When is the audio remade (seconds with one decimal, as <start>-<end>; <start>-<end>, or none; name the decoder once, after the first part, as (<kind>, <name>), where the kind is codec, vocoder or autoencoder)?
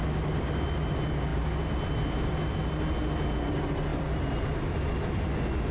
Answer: 1.3-2.8 (vocoder, BigVGAN v2); 3.9-5.7